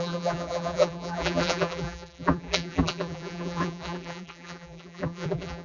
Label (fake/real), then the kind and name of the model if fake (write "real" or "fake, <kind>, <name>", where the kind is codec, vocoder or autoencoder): fake, vocoder, BigVGAN v2